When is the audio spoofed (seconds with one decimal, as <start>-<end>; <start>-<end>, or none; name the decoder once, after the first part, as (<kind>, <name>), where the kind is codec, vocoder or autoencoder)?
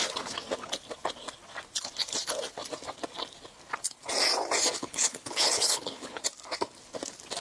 4.8-6.2 (codec, HILCodec)